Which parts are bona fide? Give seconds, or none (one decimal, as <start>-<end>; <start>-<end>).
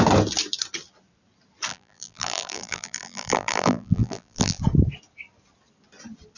0.0-1.7; 4.6-6.4